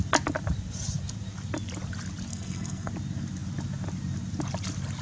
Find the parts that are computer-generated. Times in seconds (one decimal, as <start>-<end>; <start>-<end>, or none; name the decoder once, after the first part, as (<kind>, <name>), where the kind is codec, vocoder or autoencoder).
2.3-2.9 (codec, SNAC)